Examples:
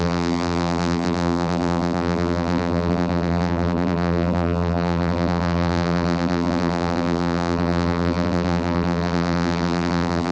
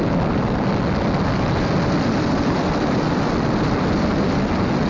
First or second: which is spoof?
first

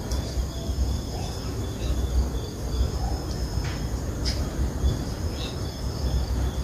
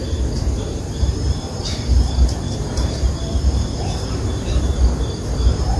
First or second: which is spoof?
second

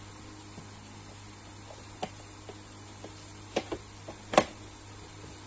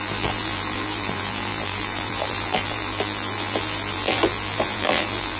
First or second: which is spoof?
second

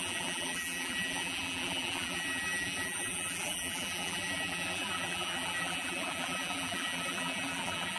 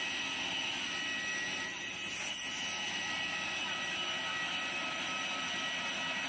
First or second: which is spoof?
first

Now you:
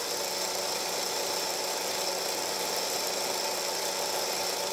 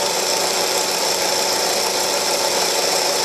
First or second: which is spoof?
second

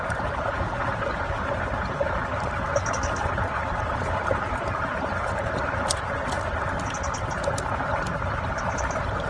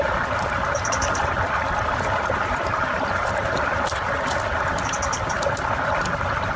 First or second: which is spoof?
second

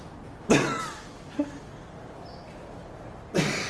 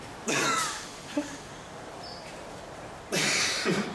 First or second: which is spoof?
second